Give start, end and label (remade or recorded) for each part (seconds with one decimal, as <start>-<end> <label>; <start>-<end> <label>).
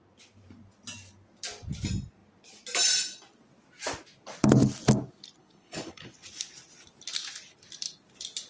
0.0-5.4 recorded; 5.4-6.1 remade; 6.1-8.5 recorded